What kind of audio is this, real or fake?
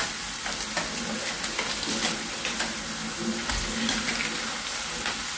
real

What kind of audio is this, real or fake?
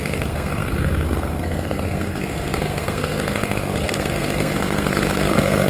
fake